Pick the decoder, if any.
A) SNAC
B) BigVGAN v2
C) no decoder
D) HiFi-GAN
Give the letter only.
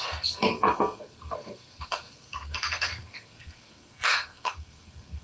A